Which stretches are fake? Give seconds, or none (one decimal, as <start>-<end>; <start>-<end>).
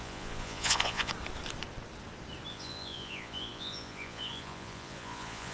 0.0-1.1; 2.5-5.5